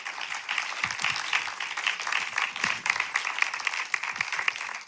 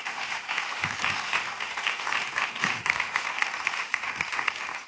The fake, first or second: second